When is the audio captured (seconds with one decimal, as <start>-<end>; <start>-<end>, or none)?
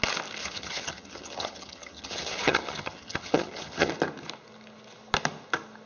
0.0-0.4; 3.9-5.9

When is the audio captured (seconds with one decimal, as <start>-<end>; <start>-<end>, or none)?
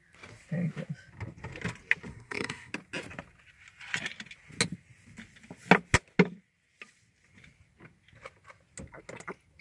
0.0-2.1; 2.7-9.6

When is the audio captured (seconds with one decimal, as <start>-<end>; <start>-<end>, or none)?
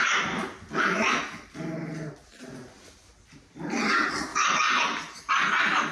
0.0-5.9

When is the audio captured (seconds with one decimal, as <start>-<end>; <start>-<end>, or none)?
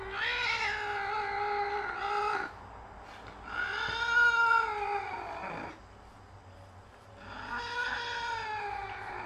0.0-9.3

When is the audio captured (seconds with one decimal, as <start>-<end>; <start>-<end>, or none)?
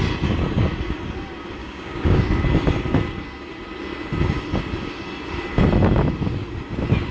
0.0-1.6; 2.2-7.1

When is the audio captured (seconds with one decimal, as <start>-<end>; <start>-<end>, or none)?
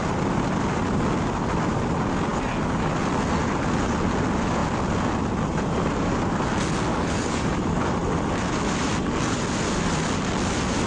0.0-6.9; 7.5-10.9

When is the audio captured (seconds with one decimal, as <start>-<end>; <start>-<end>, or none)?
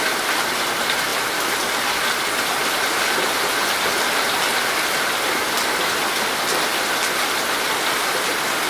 0.0-8.7